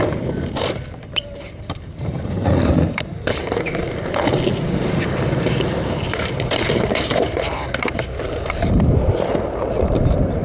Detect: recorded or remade remade